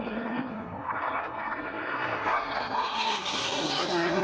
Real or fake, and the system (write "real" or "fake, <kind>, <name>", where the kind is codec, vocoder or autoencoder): fake, codec, SNAC